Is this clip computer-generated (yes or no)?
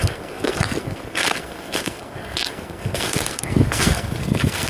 yes